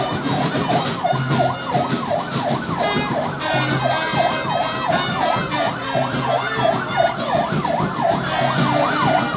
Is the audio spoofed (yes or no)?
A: no